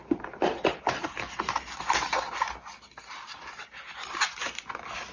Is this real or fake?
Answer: real